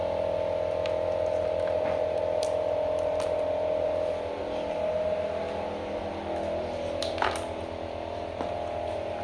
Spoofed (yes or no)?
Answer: no